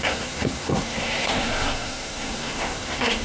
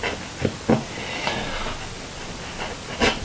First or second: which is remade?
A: first